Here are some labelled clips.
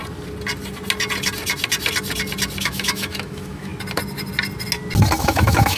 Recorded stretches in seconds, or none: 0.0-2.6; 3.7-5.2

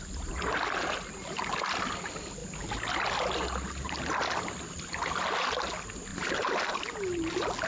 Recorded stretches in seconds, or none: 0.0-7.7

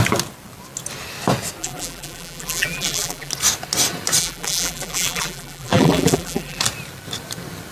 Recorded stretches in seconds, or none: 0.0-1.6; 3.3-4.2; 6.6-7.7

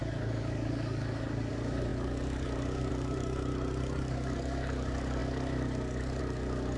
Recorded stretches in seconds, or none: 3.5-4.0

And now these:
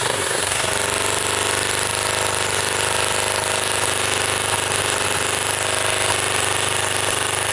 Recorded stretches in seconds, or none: 0.7-7.5

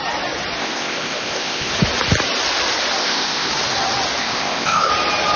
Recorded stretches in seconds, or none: 0.0-0.6; 1.7-3.0; 3.5-4.2; 4.9-5.4

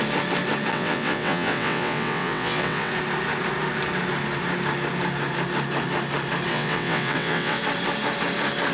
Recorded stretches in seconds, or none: 0.0-0.7; 2.9-6.5; 7.6-8.7

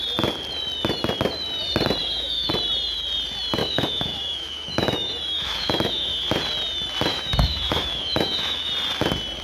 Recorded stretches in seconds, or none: 0.0-2.0; 2.5-3.6; 6.1-7.1; 8.7-9.4